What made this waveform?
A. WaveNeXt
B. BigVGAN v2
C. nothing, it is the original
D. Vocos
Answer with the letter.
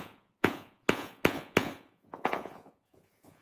D